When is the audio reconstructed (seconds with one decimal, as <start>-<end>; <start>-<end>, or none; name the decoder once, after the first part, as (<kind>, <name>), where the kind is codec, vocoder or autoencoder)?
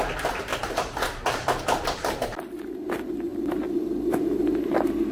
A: 0.5-2.7 (vocoder, BigVGAN v2); 3.3-4.3